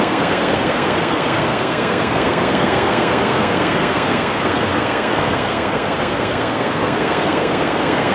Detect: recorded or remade remade